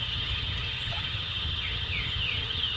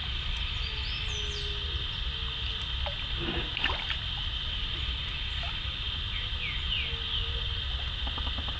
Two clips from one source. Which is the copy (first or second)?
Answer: first